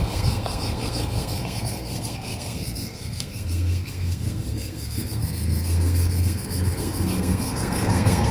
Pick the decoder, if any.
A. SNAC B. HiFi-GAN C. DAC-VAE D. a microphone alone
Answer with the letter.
A